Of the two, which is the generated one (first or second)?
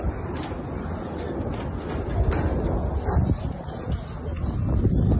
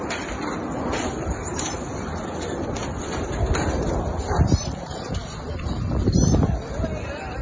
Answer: second